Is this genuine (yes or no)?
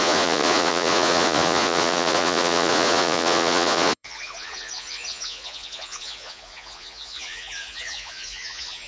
no